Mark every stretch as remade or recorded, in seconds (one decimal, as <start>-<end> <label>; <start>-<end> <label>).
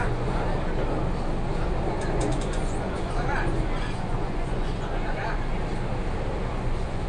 0.0-0.5 remade; 0.5-1.9 recorded; 1.9-5.5 remade; 5.5-6.5 recorded; 6.5-7.1 remade